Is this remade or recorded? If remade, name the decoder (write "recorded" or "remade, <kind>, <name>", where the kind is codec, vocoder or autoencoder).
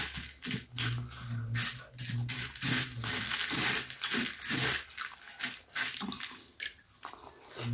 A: recorded